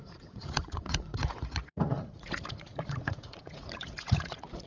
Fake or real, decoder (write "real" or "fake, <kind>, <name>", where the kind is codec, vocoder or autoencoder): fake, vocoder, Vocos